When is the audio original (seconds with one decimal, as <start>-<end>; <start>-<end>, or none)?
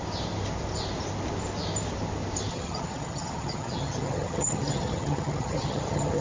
0.0-2.5